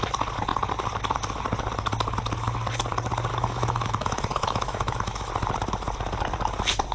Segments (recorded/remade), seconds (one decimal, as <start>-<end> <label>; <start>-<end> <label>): 0.0-3.3 recorded; 3.3-5.3 remade; 5.3-6.9 recorded